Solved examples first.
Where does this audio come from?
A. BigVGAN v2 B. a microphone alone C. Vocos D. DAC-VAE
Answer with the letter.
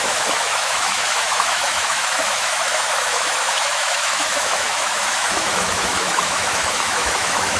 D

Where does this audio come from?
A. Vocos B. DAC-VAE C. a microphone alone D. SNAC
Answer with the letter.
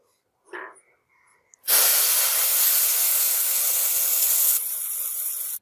C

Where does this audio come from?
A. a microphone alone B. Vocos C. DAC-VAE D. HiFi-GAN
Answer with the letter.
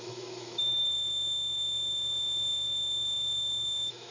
C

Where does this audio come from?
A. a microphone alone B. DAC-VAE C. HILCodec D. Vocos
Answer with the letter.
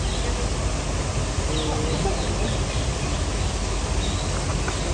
A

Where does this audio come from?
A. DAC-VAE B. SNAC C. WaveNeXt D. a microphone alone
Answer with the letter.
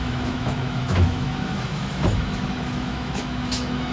A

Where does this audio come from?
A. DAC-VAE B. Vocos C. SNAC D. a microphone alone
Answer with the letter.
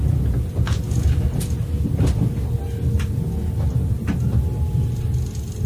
D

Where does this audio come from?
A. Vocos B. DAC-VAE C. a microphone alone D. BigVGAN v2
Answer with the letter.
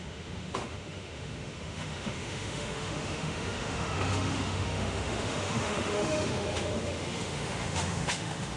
B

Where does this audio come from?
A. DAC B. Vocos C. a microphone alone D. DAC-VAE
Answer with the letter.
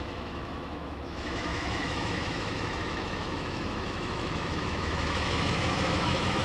D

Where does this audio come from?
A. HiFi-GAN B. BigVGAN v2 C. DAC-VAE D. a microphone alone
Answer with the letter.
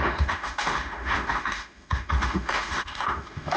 C